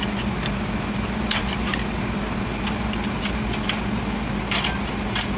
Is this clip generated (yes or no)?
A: no